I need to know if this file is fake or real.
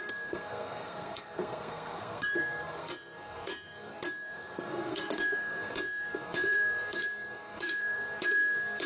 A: fake